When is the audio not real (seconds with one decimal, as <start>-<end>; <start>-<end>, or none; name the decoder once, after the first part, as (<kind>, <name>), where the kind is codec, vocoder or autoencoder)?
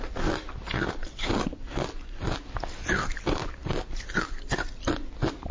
none